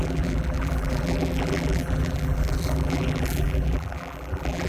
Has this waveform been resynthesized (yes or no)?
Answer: yes